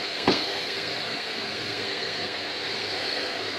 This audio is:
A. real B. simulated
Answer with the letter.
B